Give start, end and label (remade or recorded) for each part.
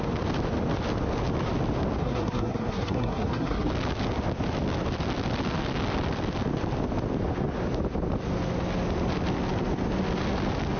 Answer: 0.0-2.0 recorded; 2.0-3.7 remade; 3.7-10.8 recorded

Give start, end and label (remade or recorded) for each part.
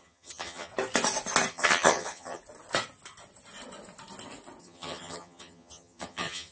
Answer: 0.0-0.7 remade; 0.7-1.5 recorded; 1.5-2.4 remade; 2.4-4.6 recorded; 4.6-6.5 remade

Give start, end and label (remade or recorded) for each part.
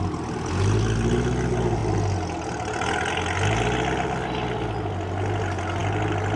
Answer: 0.0-6.4 recorded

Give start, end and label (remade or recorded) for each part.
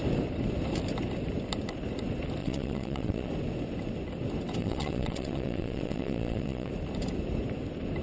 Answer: 0.0-2.4 recorded; 2.4-3.3 remade; 3.3-4.6 recorded; 4.6-6.7 remade; 6.7-8.0 recorded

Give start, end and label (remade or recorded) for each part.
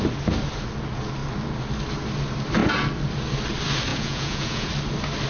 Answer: 0.0-3.9 recorded; 3.9-4.7 remade; 4.7-5.3 recorded